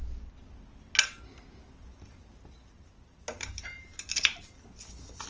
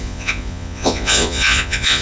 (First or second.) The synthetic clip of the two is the second